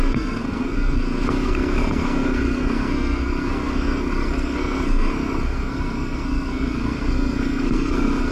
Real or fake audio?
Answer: fake